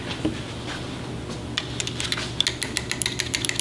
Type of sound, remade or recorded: recorded